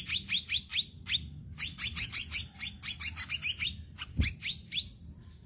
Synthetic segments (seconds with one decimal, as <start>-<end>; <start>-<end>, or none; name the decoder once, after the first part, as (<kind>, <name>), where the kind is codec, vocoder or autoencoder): none